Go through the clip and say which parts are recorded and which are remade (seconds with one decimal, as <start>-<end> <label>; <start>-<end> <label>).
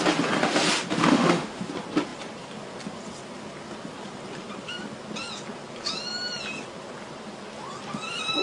0.0-1.0 recorded; 1.0-1.6 remade; 1.6-8.4 recorded